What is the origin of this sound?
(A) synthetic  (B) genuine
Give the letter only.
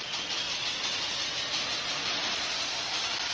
B